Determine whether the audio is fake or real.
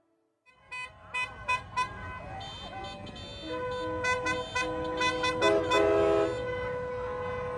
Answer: real